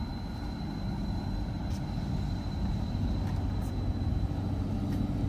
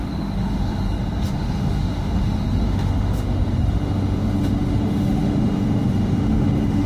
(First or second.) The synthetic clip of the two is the second